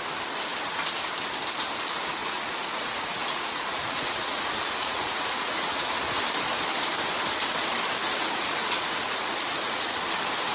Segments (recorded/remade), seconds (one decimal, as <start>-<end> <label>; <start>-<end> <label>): 0.0-2.2 recorded; 2.2-5.9 remade; 5.9-8.0 recorded; 8.0-9.9 remade; 9.9-10.5 recorded